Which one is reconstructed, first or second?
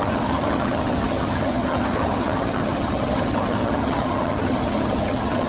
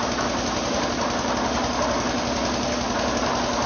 first